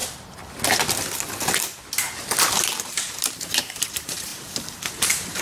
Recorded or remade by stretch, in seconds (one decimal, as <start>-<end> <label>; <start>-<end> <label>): 0.0-2.8 recorded; 2.8-4.3 remade; 4.3-4.9 recorded; 4.9-5.4 remade